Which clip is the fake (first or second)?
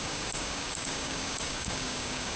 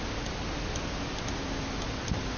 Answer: first